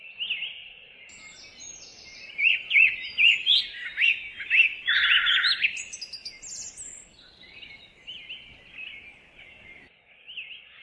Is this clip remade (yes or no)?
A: no